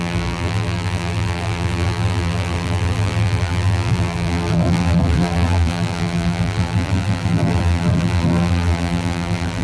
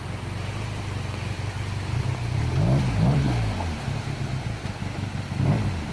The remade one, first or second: first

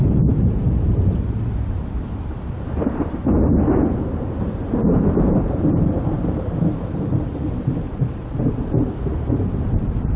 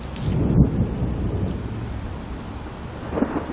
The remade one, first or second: first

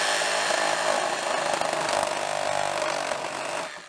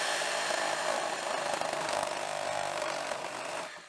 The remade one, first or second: second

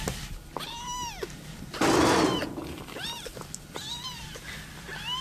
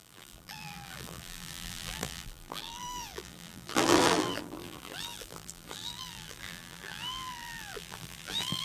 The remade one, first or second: second